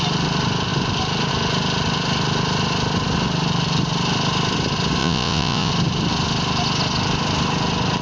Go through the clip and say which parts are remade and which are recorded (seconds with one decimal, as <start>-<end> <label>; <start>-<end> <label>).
0.0-5.0 recorded; 5.0-5.7 remade; 5.7-8.0 recorded